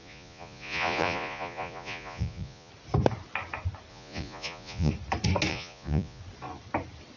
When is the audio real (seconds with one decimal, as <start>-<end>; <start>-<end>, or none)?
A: 2.7-3.9; 4.9-5.5; 6.2-7.2